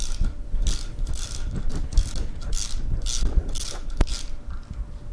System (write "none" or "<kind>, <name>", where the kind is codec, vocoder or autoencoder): none